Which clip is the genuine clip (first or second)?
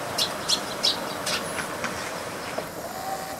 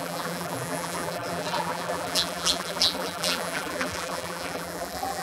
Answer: first